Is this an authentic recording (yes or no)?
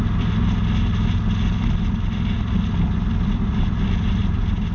yes